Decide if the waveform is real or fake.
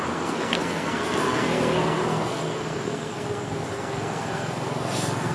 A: fake